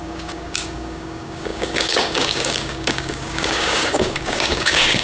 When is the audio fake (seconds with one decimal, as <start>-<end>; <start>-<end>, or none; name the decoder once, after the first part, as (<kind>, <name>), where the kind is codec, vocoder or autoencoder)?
0.0-5.0 (codec, DAC)